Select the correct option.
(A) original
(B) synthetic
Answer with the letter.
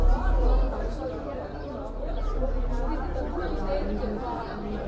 A